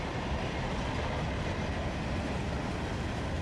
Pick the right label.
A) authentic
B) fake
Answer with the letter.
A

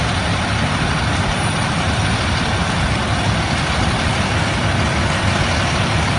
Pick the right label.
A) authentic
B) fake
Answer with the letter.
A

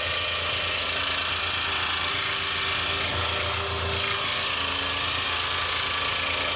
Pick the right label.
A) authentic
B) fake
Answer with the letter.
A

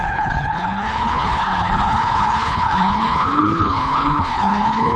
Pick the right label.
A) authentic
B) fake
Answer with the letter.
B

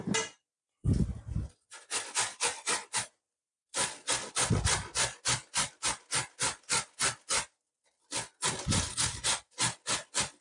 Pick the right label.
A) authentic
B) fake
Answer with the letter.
A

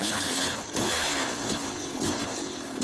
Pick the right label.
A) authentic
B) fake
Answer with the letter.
B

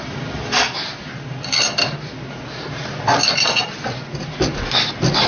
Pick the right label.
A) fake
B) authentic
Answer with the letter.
B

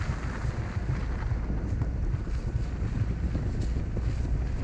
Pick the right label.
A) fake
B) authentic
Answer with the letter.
B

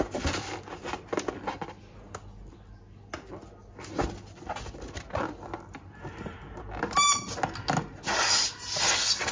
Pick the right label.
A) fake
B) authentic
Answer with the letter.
B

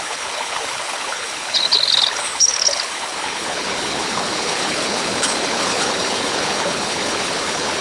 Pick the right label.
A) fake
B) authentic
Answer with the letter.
A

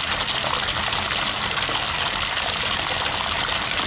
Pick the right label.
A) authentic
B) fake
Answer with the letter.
A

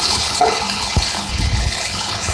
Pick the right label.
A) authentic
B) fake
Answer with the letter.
B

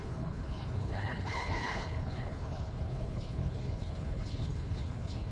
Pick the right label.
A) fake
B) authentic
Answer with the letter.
A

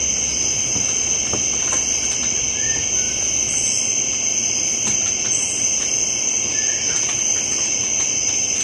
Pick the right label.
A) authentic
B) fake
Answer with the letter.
A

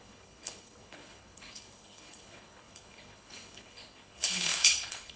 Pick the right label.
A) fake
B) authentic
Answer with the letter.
A